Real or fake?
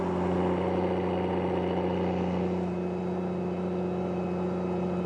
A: real